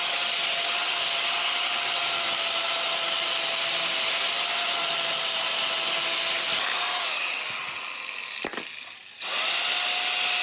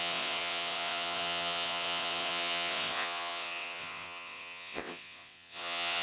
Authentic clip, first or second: first